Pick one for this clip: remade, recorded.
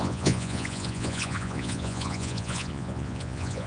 remade